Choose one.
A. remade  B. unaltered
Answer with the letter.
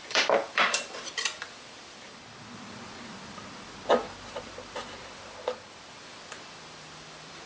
A